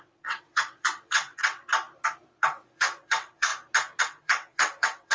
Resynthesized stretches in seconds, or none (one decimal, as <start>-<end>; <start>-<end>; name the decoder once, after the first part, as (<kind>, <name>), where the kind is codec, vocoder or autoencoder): 0.0-1.6 (vocoder, WaveNeXt); 2.4-3.5; 4.0-5.1